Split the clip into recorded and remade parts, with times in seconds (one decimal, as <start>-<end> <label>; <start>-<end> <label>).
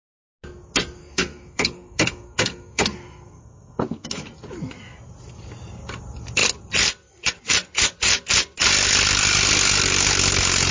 0.0-1.0 recorded; 1.0-4.2 remade; 4.2-10.7 recorded